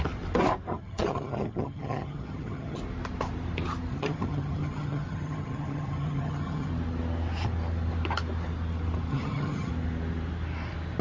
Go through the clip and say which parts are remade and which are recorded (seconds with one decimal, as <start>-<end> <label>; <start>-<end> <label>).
0.0-0.7 recorded; 0.7-2.8 remade; 2.8-3.9 recorded; 3.9-6.7 remade; 6.7-9.1 recorded; 9.1-9.7 remade; 9.7-11.0 recorded